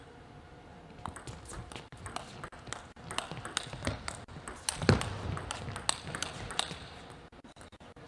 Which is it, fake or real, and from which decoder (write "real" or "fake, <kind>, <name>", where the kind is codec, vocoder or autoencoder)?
real